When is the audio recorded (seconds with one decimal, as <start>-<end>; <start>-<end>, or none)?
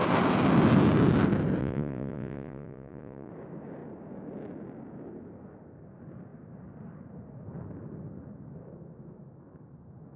0.0-1.6; 3.3-10.2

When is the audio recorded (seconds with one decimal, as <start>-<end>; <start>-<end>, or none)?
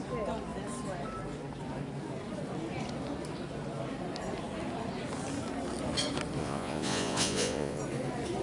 0.0-6.4; 7.8-8.4